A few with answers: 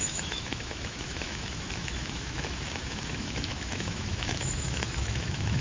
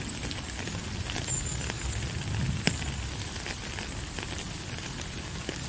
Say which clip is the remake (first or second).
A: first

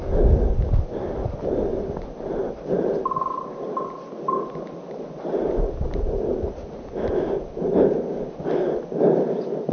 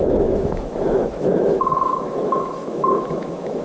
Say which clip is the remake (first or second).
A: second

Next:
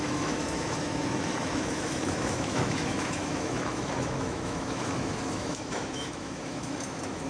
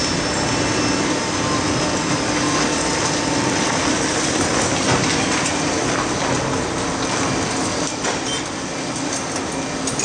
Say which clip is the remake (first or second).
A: first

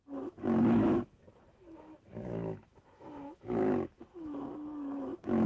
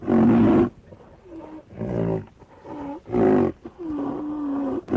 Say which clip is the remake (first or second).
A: first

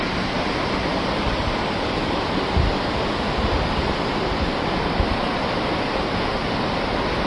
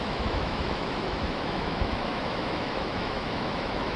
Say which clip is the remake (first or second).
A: second